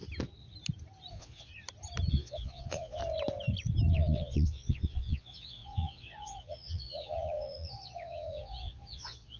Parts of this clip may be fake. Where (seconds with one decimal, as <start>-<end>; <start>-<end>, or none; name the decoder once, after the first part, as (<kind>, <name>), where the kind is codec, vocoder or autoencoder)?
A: 1.1-1.5 (vocoder, Vocos); 2.1-3.0; 3.9-9.4